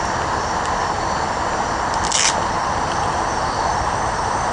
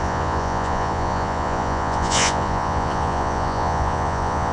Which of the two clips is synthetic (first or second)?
second